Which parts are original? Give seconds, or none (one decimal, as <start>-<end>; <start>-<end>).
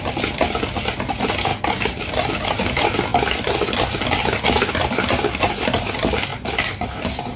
0.0-7.4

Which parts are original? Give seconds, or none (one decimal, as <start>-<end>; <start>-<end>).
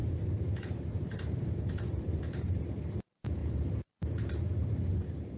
3.4-4.1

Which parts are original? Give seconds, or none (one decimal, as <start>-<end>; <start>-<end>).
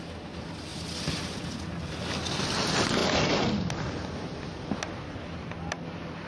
0.0-6.3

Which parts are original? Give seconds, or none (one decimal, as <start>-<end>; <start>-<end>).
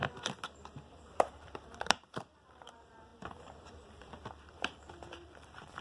0.0-0.9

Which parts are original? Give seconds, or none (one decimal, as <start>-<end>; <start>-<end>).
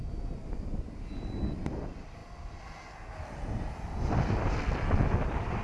2.2-3.7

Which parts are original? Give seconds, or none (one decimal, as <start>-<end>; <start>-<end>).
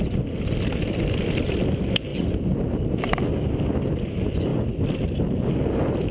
0.0-2.1; 3.2-6.1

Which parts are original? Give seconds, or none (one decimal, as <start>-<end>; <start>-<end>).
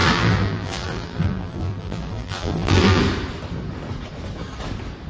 3.0-5.1